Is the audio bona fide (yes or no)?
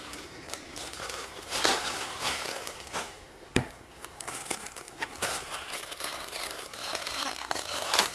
no